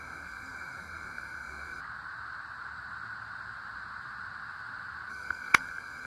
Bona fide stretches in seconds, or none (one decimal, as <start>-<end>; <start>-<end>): 1.8-5.1